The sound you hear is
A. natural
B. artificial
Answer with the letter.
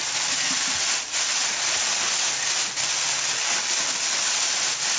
A